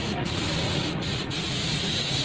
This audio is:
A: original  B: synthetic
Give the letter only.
B